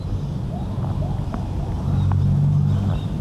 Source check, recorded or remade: recorded